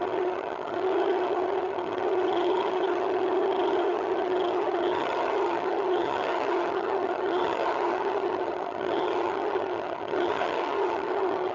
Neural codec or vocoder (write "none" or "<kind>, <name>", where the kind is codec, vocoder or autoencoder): vocoder, HiFi-GAN